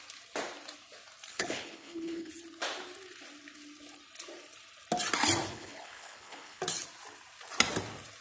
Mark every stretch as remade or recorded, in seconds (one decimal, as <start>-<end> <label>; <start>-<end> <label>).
0.0-1.3 recorded; 1.3-2.3 remade; 2.3-5.5 recorded; 5.5-6.6 remade; 6.6-8.2 recorded

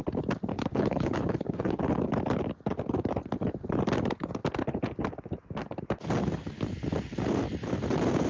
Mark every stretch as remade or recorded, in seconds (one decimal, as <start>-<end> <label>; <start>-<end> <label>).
0.0-0.5 recorded; 0.5-1.8 remade; 1.8-8.3 recorded